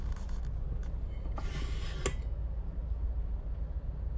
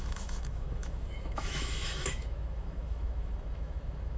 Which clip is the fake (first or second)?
second